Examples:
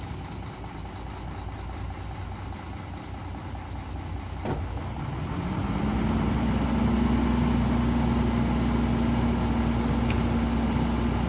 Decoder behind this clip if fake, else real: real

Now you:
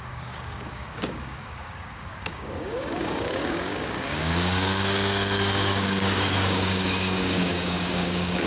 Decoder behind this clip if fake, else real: fake, codec, DAC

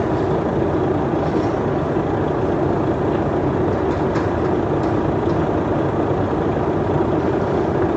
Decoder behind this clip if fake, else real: real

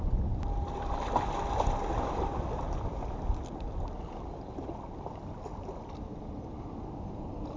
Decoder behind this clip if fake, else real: real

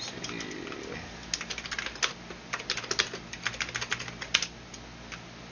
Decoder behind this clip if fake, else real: real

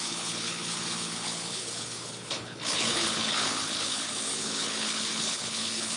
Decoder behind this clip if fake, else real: fake, codec, HILCodec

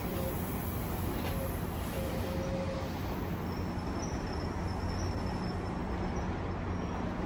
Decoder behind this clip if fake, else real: real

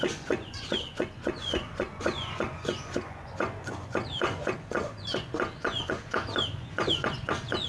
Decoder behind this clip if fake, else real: fake, vocoder, Vocos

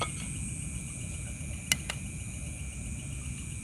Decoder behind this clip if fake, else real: real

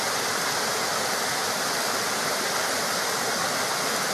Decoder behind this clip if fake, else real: real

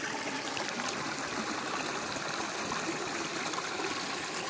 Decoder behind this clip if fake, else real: fake, vocoder, BigVGAN v2